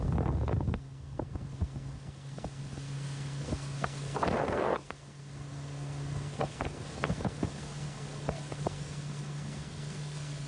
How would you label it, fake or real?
fake